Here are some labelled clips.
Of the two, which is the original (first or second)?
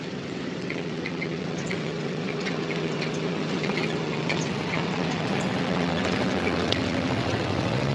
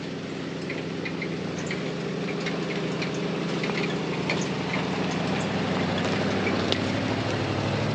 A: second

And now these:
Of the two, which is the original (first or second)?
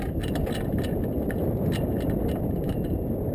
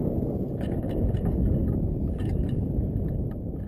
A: first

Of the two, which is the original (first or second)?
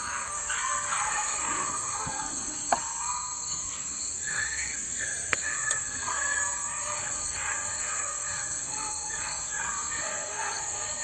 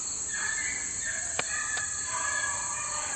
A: second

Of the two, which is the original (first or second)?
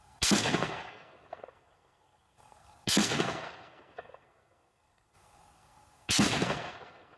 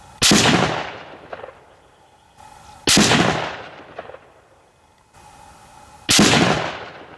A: second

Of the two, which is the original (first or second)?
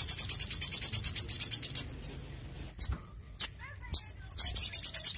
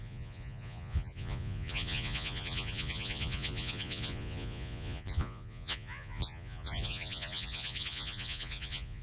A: first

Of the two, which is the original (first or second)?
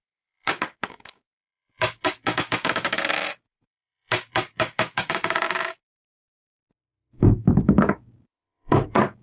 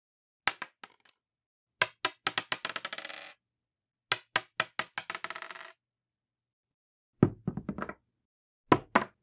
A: second